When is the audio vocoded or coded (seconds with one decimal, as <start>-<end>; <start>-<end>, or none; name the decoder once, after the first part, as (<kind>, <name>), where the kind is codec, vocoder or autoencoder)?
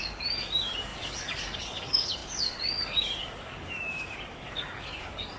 0.0-5.4 (codec, DAC)